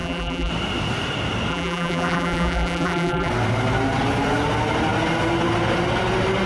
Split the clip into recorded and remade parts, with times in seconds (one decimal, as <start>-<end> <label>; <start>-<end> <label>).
0.0-0.5 remade; 0.5-1.5 recorded; 1.5-3.3 remade; 3.3-6.5 recorded